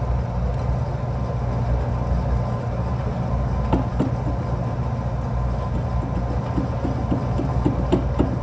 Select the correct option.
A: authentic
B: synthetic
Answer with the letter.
A